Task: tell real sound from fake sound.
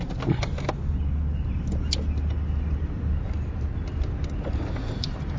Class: real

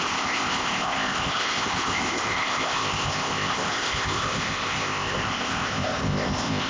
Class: fake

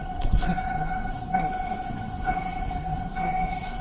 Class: fake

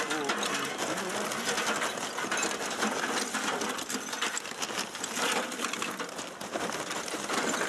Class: real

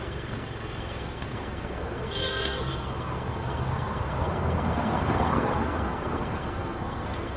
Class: fake